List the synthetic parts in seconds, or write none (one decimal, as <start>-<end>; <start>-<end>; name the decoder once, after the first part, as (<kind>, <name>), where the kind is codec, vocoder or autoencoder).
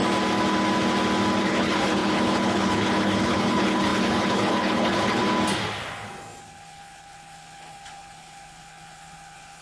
1.4-5.2 (codec, HILCodec); 6.4-9.6